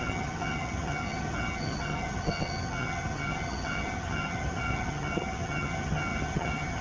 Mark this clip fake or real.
fake